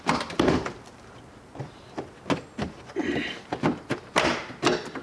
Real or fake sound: real